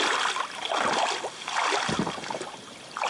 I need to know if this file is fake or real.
real